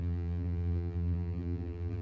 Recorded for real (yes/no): no